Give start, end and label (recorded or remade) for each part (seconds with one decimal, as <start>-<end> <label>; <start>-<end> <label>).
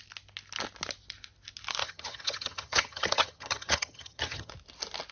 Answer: 0.0-1.8 recorded; 1.8-4.5 remade; 4.5-5.1 recorded